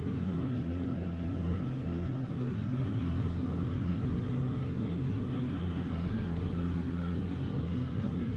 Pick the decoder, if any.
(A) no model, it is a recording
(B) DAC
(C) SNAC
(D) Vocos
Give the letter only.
C